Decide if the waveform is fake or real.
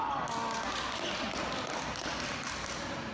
real